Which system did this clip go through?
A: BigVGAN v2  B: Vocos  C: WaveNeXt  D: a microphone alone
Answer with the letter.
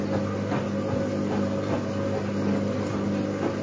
D